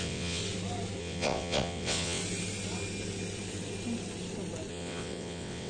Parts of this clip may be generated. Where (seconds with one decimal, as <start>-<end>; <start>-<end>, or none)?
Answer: 0.0-0.4; 1.0-2.2; 4.7-5.7